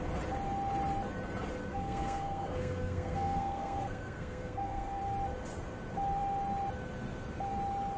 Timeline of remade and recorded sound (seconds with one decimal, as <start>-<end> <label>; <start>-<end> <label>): 0.0-1.7 recorded; 1.7-5.0 remade; 5.0-8.0 recorded